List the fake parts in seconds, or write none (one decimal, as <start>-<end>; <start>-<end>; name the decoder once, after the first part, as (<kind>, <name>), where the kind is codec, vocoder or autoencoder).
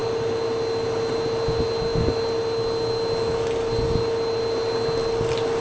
none